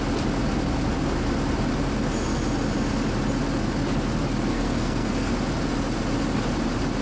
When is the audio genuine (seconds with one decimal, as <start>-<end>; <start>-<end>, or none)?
0.0-4.5; 5.3-7.0